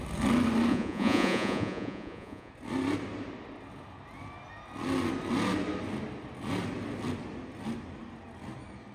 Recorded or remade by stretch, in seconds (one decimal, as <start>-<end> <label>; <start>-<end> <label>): 0.0-0.7 recorded; 0.7-2.5 remade; 2.5-8.9 recorded